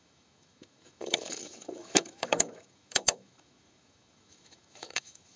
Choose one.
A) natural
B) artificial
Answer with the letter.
B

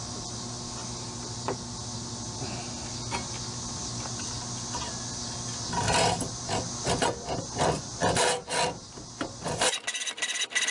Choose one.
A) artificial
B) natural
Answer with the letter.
B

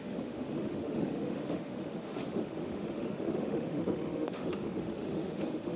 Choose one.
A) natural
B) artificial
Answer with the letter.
B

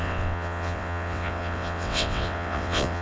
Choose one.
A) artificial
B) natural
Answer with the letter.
A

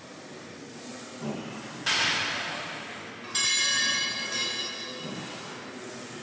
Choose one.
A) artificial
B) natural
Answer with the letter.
B